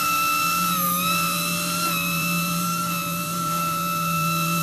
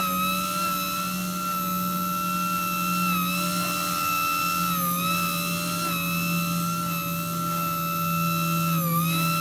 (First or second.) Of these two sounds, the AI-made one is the first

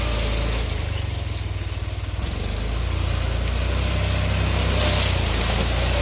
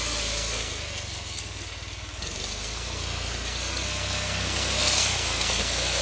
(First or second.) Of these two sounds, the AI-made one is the second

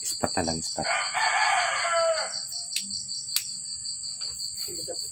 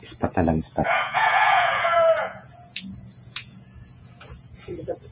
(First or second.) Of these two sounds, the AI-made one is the second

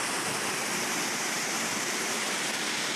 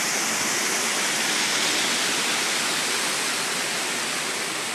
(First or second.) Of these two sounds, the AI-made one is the first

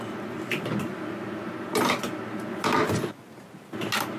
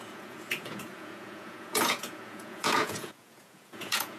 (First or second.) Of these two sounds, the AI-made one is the second